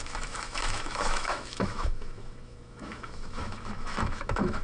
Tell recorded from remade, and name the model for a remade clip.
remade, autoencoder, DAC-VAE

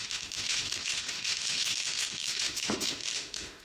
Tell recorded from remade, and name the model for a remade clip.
remade, autoencoder, DAC-VAE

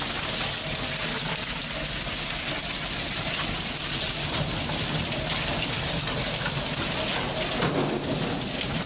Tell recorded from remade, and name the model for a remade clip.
recorded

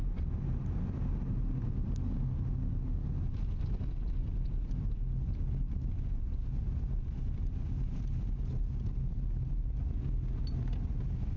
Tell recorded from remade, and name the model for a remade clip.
recorded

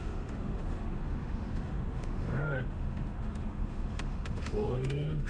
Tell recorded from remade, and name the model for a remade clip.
remade, autoencoder, DAC-VAE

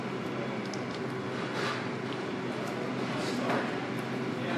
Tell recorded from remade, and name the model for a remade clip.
recorded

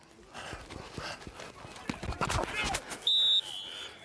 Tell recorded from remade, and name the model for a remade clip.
recorded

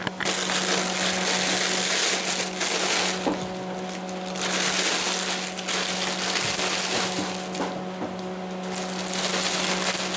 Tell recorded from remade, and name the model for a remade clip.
recorded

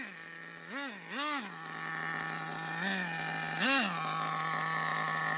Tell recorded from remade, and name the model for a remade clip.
recorded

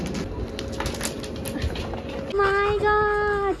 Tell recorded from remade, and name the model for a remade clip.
recorded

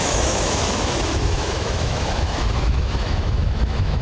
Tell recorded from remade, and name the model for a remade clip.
remade, autoencoder, DAC-VAE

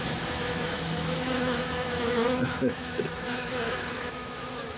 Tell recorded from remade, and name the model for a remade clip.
remade, autoencoder, DAC-VAE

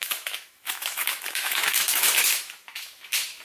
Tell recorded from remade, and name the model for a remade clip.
remade, autoencoder, DAC-VAE